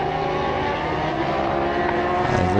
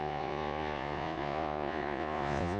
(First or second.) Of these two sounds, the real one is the first